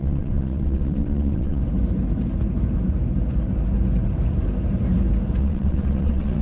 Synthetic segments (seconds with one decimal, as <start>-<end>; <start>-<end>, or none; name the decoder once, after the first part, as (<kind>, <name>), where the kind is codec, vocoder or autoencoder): 0.0-1.6 (vocoder, WaveNeXt); 5.4-6.4